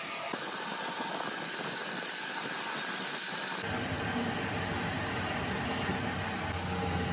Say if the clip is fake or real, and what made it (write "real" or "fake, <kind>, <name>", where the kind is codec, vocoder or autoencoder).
real